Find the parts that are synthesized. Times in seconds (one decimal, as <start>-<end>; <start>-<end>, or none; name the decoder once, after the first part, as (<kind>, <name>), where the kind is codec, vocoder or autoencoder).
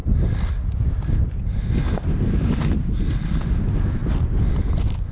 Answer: none